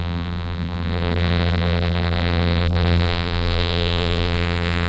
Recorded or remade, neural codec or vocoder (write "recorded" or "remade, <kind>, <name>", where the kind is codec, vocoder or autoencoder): remade, vocoder, BigVGAN v2